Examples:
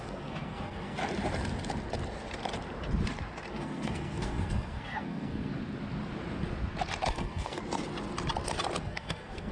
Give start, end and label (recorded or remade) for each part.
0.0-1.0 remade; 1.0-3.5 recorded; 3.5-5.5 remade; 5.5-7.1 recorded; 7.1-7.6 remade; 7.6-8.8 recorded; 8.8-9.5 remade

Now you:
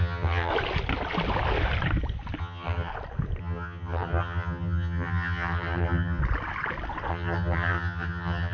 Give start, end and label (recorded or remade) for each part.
0.0-0.5 remade; 0.5-2.4 recorded; 2.4-2.9 remade; 2.9-3.4 recorded; 3.4-6.2 remade; 6.2-7.1 recorded; 7.1-8.5 remade

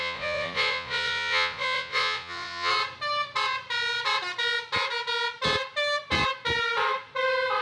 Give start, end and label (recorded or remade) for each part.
0.0-2.7 remade; 2.7-7.6 recorded

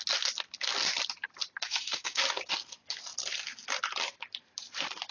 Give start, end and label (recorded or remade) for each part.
0.0-1.6 recorded; 1.6-2.2 remade; 2.2-5.1 recorded

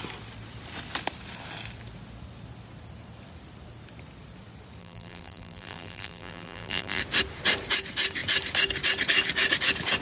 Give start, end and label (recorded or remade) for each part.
0.0-4.8 recorded; 4.8-7.0 remade; 7.0-10.0 recorded